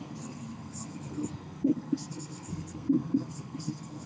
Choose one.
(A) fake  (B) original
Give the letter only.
A